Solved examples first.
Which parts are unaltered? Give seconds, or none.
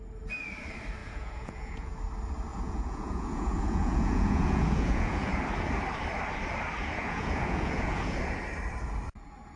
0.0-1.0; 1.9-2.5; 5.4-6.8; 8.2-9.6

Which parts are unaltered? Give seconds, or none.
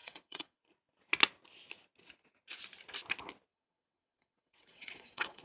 0.6-3.5